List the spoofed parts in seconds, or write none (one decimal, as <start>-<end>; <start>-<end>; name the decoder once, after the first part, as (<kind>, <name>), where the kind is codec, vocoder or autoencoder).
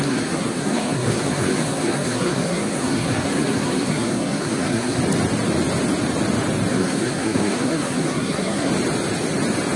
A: 0.0-5.0 (codec, SNAC); 6.7-8.7